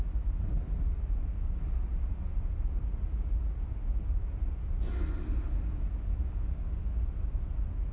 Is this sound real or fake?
real